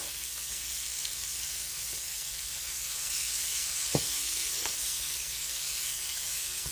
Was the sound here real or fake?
fake